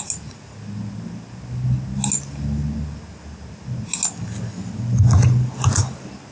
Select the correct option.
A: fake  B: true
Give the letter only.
B